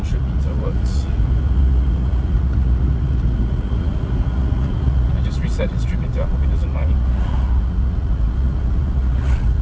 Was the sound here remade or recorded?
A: remade